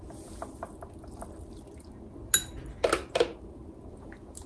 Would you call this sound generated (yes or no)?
no